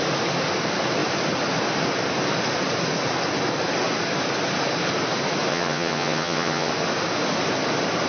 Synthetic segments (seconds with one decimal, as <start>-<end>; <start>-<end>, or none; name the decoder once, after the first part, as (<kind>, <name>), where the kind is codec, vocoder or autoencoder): 5.5-6.7 (vocoder, HiFi-GAN)